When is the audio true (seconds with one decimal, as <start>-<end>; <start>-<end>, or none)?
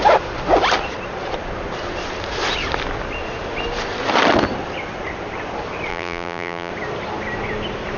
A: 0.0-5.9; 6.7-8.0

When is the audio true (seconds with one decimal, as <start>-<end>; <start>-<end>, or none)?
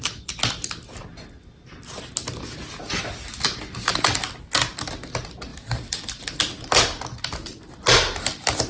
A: 0.0-5.5; 6.2-8.7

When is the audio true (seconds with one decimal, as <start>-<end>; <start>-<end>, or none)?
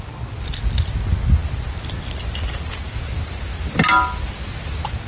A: 0.0-5.1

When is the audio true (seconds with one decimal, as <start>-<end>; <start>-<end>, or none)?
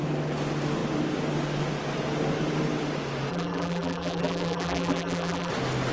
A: 0.0-3.3; 5.5-5.9